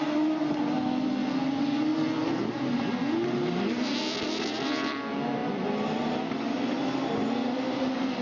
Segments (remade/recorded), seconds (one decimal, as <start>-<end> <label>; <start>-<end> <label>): 0.0-8.2 recorded